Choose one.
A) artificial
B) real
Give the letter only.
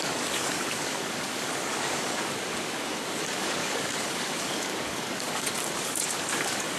A